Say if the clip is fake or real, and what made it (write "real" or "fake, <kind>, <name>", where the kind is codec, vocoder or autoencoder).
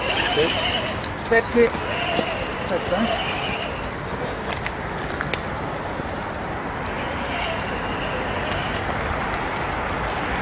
real